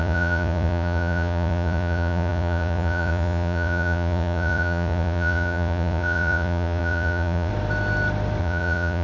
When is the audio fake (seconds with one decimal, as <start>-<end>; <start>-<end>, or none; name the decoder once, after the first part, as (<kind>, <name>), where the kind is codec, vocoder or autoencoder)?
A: 0.0-7.5 (vocoder, Vocos); 8.4-9.0